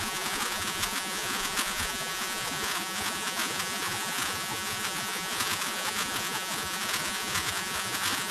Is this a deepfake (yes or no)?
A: yes